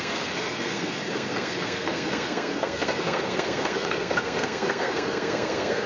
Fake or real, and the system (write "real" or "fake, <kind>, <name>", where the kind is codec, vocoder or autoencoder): fake, codec, SNAC